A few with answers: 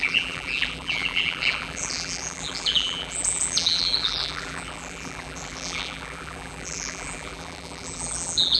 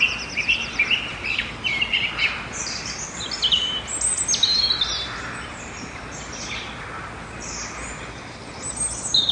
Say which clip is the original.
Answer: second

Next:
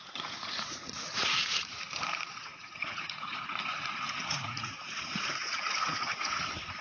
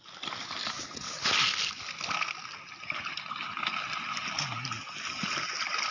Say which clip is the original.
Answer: second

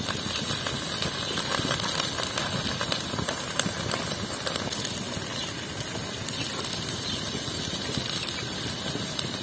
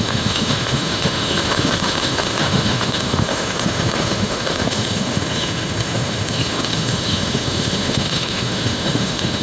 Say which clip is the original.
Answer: first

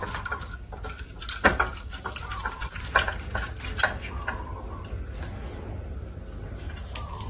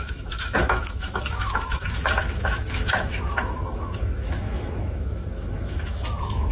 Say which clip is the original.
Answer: first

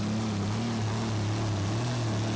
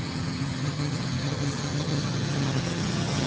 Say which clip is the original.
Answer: first